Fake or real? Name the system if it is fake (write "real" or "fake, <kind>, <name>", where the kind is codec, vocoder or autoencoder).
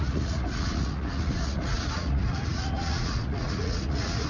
fake, vocoder, Vocos